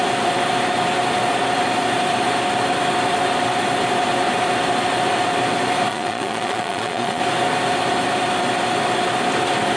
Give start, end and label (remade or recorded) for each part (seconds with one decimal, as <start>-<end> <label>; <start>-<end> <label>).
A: 0.0-5.9 recorded; 5.9-7.2 remade; 7.2-9.8 recorded